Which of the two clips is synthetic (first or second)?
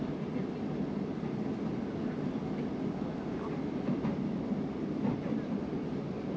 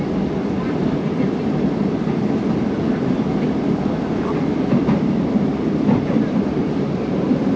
second